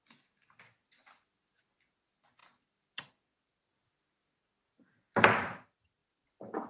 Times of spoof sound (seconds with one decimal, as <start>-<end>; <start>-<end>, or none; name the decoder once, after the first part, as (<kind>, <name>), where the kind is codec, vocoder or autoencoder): none